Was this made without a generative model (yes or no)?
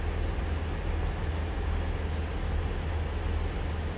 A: yes